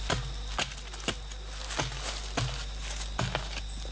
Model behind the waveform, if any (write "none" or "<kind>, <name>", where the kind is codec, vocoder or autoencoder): none